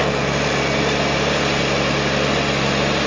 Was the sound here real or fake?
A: real